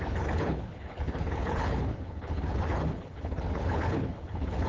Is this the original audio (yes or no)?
no